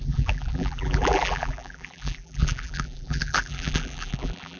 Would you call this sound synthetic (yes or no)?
yes